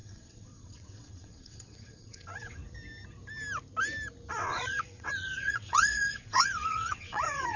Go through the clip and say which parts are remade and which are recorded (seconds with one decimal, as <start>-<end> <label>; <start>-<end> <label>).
0.0-2.6 remade; 2.6-4.3 recorded; 4.3-7.6 remade